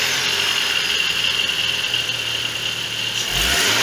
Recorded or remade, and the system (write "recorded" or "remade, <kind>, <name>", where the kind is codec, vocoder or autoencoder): recorded